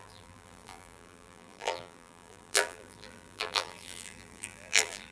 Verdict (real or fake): fake